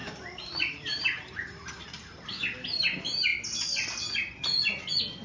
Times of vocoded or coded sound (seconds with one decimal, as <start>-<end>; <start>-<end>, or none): 0.0-2.4